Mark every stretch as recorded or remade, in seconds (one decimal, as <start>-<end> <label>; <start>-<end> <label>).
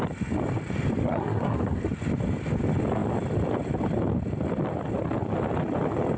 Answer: 0.0-1.0 recorded; 1.0-1.8 remade; 1.8-6.2 recorded